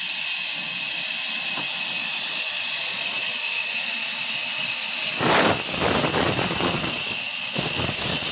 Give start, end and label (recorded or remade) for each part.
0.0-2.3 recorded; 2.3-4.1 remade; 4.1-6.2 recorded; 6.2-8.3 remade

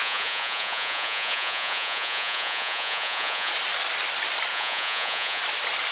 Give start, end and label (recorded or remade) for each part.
0.0-3.5 remade; 3.5-4.5 recorded; 4.5-5.4 remade; 5.4-5.9 recorded

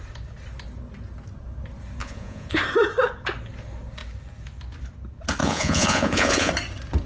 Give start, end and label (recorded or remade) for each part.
0.0-2.0 recorded; 2.0-2.6 remade; 2.6-5.4 recorded; 5.4-6.5 remade; 6.5-7.1 recorded

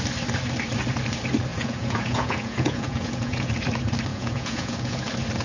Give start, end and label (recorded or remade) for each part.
0.0-1.5 recorded; 1.5-3.5 remade; 3.5-4.1 recorded; 4.1-5.0 remade; 5.0-5.4 recorded